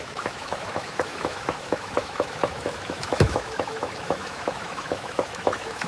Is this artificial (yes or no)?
yes